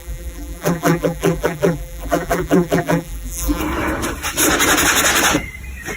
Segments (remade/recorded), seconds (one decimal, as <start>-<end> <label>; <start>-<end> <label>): 0.0-3.6 remade; 3.6-6.0 recorded

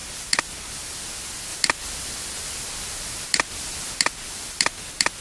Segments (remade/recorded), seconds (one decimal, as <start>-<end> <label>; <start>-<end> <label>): 0.0-5.2 recorded

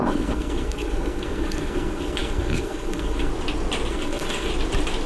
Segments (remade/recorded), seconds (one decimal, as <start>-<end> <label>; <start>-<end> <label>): 0.0-3.3 remade; 3.3-3.9 recorded; 3.9-4.5 remade; 4.5-5.1 recorded

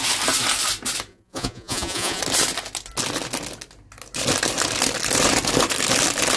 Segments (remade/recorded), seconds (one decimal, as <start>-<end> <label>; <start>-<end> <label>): 0.0-1.1 recorded; 1.1-2.2 remade; 2.2-6.4 recorded

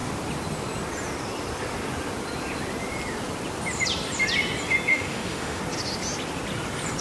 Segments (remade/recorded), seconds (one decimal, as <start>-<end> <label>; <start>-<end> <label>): 0.0-4.9 recorded; 4.9-5.6 remade; 5.6-7.0 recorded